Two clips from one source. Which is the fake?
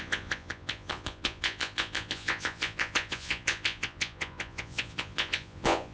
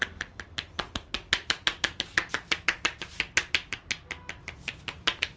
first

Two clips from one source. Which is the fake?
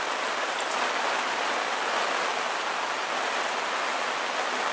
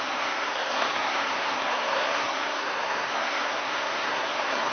second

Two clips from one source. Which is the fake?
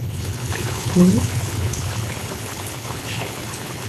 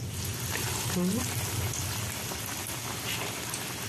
first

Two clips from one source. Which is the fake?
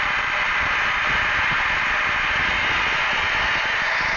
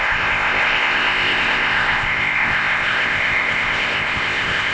second